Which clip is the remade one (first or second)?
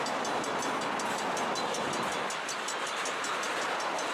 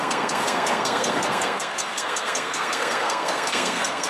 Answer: second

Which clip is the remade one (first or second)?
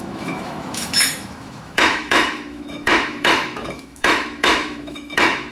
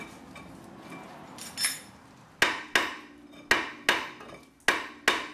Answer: first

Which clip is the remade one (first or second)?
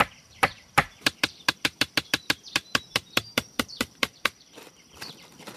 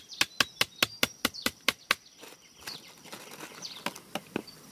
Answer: first